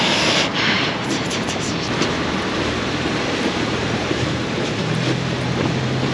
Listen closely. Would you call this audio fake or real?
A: fake